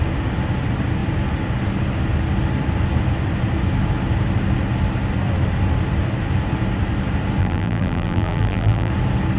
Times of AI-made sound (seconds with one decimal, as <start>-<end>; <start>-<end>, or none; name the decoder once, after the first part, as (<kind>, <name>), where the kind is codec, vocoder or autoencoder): 7.4-8.9 (vocoder, BigVGAN v2)